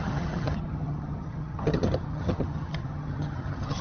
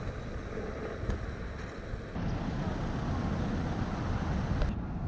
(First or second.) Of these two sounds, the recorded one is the second